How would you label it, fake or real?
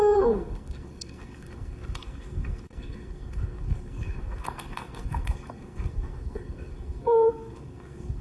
fake